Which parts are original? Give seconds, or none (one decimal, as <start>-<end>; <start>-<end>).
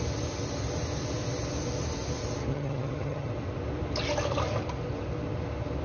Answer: 0.0-2.5; 3.3-5.8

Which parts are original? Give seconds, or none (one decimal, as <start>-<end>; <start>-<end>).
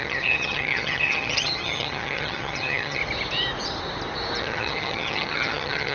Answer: 3.0-4.4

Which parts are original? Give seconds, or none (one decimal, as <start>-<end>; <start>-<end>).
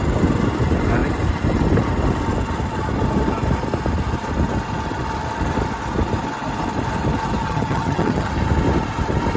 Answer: 0.0-7.4; 8.3-9.4